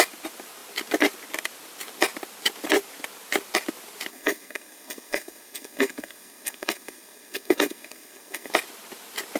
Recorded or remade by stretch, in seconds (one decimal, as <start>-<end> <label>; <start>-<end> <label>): 0.0-4.1 recorded; 4.1-8.5 remade; 8.5-9.4 recorded